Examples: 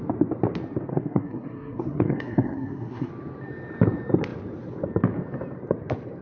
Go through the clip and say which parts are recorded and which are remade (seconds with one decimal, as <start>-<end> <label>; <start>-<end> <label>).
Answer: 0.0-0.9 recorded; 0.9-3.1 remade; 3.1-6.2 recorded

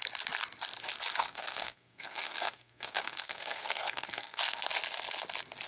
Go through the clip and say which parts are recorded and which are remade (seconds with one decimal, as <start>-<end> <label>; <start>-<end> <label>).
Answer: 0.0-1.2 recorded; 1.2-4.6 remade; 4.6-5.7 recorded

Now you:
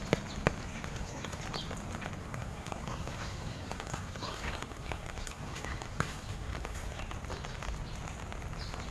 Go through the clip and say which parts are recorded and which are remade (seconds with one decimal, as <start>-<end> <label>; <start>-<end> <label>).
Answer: 0.0-0.6 recorded; 0.6-1.4 remade; 1.4-2.2 recorded; 2.2-7.0 remade; 7.0-8.9 recorded

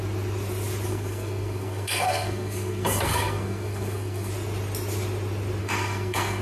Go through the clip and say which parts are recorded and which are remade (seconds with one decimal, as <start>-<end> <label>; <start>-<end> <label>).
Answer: 0.0-0.9 recorded; 0.9-4.3 remade; 4.3-5.6 recorded; 5.6-6.4 remade

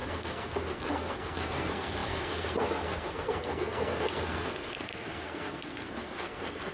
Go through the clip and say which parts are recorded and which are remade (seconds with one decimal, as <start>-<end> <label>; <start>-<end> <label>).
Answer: 0.0-6.7 remade

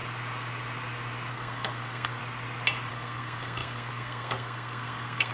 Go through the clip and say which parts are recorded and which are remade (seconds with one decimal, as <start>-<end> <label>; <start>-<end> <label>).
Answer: 0.0-1.3 recorded; 1.3-2.2 remade; 2.2-2.9 recorded; 2.9-5.3 remade

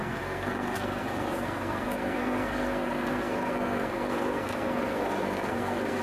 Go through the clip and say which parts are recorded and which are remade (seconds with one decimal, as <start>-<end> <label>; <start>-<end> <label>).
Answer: 0.0-6.0 remade

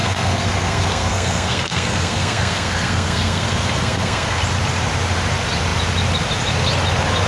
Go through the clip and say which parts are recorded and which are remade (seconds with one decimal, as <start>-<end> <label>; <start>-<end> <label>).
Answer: 0.0-4.4 remade; 4.4-7.3 recorded